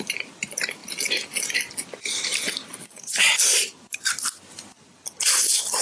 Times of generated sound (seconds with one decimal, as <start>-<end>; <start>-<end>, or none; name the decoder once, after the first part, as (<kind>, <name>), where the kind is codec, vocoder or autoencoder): 2.8-3.3 (vocoder, Vocos)